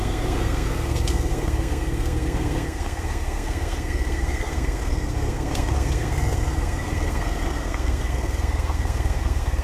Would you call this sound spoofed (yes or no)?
yes